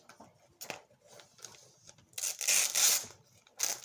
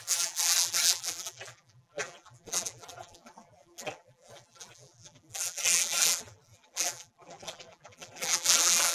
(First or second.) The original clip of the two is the first